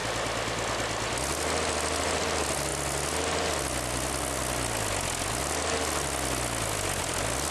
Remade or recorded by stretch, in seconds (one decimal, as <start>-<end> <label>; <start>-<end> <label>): 0.0-7.5 recorded